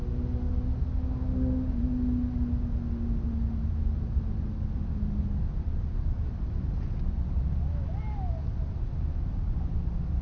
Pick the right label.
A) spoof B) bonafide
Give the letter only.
B